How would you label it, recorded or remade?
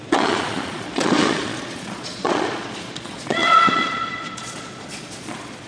remade